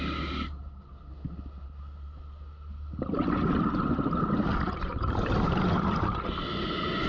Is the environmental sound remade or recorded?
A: recorded